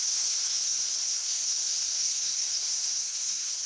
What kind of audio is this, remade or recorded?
remade